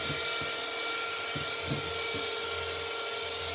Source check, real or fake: real